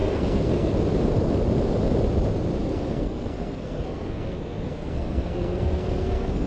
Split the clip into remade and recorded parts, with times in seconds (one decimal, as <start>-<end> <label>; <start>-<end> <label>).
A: 0.0-0.7 remade; 0.7-2.6 recorded; 2.6-6.5 remade